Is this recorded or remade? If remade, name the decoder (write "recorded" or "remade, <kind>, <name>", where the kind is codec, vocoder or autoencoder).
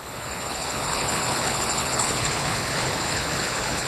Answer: remade, codec, HILCodec